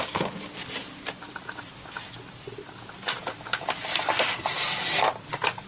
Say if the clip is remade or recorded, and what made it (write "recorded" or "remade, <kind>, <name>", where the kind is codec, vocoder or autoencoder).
recorded